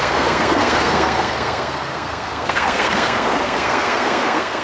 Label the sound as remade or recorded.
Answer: remade